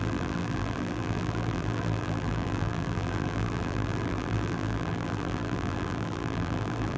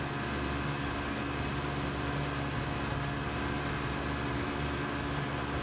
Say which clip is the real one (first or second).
second